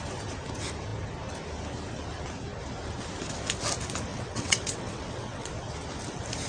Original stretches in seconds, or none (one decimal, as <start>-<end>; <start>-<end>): 0.0-4.1; 5.5-6.5